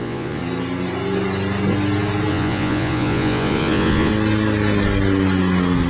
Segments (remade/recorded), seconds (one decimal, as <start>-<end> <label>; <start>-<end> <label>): 0.0-0.4 remade; 0.4-2.3 recorded; 2.3-4.1 remade; 4.1-5.9 recorded